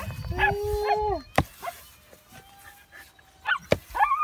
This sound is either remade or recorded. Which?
recorded